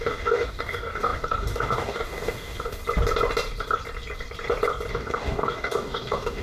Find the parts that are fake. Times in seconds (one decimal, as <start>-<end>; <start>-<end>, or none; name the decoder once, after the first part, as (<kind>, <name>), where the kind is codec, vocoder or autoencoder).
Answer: 0.0-2.8 (codec, DAC); 4.9-6.4